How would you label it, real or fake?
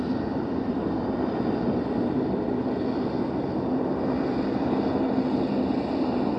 real